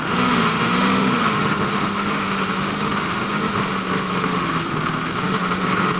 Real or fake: fake